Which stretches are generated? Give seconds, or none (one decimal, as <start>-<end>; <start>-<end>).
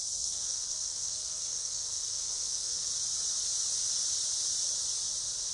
0.0-2.9